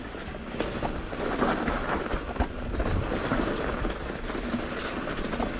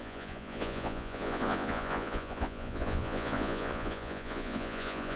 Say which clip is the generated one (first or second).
second